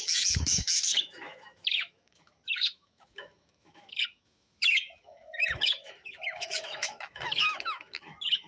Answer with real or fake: fake